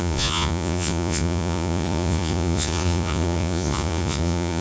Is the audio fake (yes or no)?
yes